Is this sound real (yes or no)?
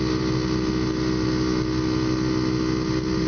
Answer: yes